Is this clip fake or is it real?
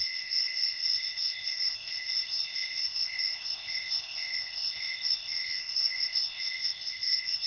fake